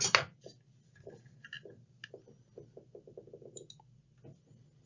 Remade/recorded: recorded